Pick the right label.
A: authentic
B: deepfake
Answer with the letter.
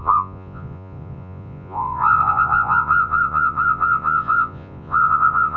B